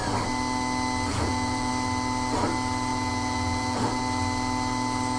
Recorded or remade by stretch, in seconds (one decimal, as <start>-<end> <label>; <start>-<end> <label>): 0.0-1.1 recorded; 1.1-1.7 remade; 1.7-2.9 recorded; 2.9-4.0 remade; 4.0-5.2 recorded